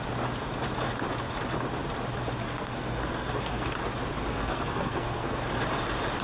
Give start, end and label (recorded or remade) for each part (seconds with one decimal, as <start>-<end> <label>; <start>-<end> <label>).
0.0-2.4 recorded; 2.4-3.7 remade; 3.7-4.3 recorded; 4.3-5.4 remade; 5.4-6.2 recorded